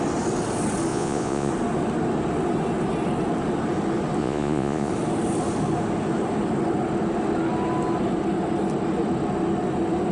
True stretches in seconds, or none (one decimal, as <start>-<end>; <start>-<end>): 0.0-0.9; 1.5-4.2; 4.9-10.1